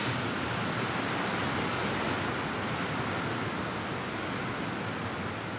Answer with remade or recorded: recorded